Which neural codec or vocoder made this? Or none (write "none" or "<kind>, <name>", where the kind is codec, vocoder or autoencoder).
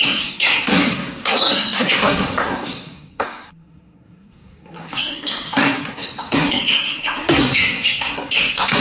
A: codec, SNAC